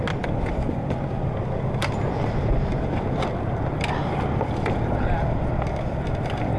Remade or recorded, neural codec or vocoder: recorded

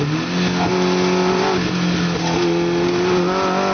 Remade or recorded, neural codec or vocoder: recorded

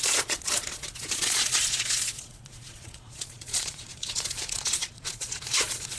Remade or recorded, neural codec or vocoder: remade, vocoder, Vocos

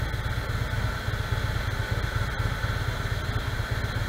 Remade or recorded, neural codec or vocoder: recorded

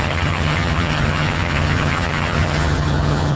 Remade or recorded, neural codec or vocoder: remade, vocoder, HiFi-GAN